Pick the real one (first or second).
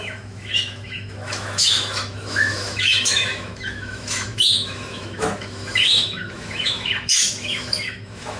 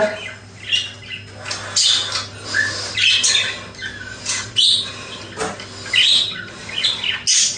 second